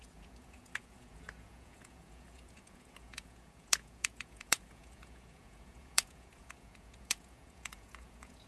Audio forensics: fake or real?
fake